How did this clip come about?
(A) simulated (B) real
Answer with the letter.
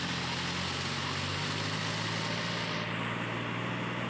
B